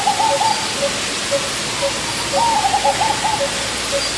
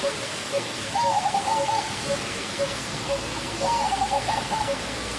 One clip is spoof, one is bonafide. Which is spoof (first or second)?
second